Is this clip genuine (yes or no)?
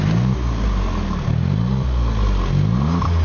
yes